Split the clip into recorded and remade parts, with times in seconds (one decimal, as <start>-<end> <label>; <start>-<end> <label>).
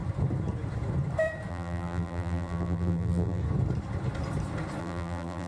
0.0-1.5 recorded; 1.5-3.4 remade; 3.4-4.8 recorded; 4.8-5.5 remade